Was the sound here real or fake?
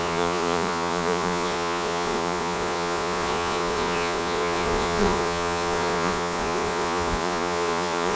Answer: fake